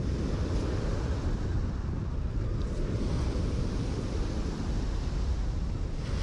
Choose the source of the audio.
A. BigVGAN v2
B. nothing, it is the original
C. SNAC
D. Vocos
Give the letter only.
B